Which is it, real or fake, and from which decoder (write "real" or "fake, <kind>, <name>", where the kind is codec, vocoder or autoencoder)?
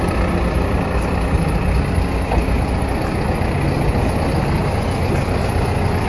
real